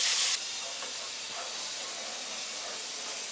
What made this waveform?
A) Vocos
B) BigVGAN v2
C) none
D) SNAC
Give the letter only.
C